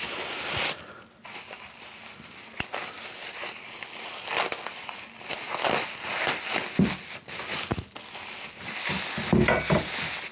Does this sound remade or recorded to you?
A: recorded